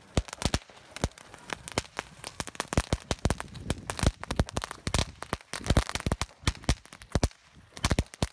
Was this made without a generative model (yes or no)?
yes